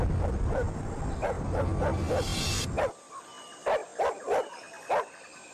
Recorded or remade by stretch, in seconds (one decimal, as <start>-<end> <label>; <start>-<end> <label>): 0.0-3.9 recorded; 3.9-4.5 remade; 4.5-5.5 recorded